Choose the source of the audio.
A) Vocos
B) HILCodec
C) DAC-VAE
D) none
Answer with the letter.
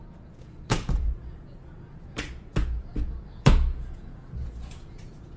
A